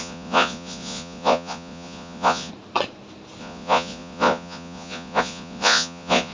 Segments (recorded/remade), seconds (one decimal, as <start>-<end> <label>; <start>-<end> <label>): 0.0-2.5 remade; 2.5-3.4 recorded; 3.4-6.3 remade